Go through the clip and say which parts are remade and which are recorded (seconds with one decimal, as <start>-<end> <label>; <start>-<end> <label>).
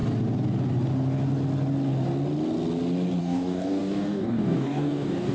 0.0-3.2 recorded; 3.2-5.3 remade